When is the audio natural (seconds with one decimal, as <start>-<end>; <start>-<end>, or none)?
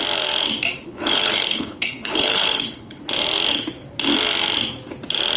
0.0-0.8; 3.0-5.4